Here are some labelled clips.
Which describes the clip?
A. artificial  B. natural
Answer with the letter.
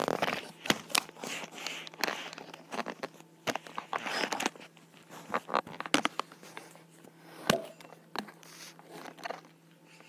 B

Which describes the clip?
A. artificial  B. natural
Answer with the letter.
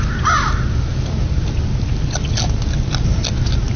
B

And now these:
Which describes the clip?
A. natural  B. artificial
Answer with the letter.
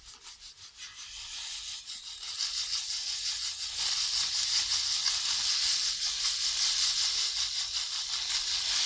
A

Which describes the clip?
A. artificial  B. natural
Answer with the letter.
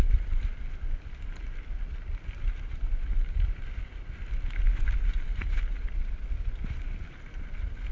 B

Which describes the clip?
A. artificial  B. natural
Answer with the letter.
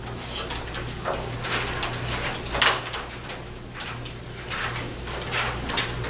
B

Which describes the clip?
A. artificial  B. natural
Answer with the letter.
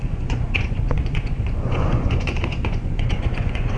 A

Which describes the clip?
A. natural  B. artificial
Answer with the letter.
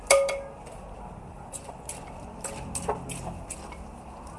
A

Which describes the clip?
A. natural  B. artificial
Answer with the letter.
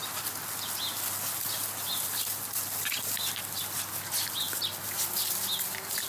A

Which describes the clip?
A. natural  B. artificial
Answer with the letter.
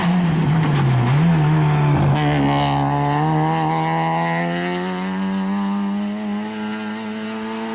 A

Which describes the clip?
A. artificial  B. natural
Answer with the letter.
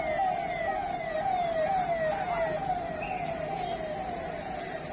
B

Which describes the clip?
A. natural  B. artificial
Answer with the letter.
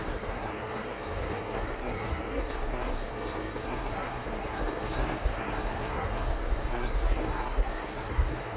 B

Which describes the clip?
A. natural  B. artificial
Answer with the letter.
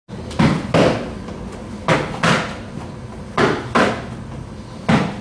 A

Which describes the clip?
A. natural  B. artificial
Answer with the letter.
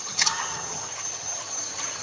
B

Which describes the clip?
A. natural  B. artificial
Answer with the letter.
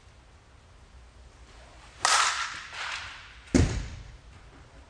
A